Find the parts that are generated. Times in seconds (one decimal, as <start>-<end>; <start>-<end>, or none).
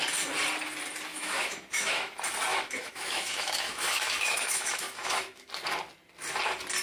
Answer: 1.1-2.1; 2.5-5.5